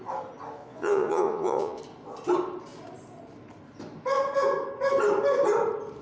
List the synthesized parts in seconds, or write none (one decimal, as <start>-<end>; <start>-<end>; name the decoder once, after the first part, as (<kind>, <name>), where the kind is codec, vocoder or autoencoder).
0.6-1.8 (vocoder, Vocos)